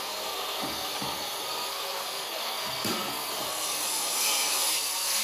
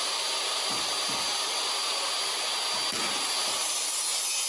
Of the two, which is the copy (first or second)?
first